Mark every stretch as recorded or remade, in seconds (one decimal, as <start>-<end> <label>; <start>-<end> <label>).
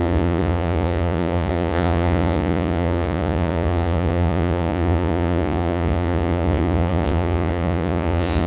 0.0-8.5 remade